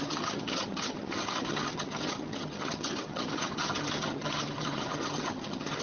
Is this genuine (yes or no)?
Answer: no